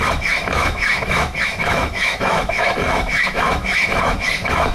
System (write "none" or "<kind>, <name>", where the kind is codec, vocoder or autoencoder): autoencoder, DAC-VAE